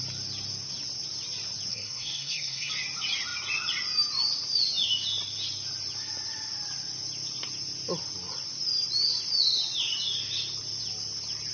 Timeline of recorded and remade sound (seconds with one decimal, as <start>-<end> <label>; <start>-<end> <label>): 0.0-1.7 recorded; 1.7-2.7 remade; 2.7-11.5 recorded